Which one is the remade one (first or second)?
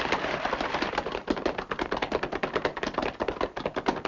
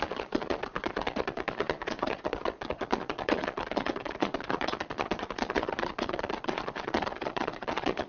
second